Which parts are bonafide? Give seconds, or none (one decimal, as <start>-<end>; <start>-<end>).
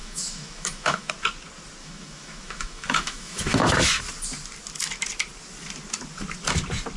1.1-1.8; 4.0-7.0